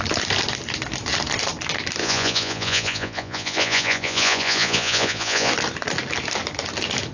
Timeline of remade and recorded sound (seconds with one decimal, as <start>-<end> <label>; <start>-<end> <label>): 0.0-2.0 recorded; 2.0-5.5 remade; 5.5-7.1 recorded